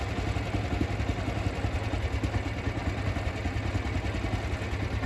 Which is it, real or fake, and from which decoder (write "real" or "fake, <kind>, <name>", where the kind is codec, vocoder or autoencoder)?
real